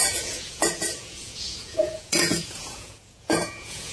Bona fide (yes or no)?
no